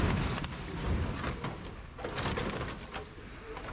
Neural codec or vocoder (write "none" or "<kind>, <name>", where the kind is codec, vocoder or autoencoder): none